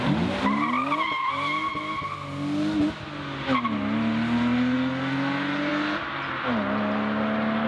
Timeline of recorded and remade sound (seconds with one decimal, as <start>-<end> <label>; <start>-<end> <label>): 0.0-7.7 recorded